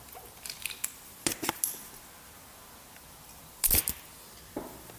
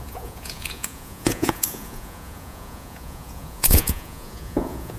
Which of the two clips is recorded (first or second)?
first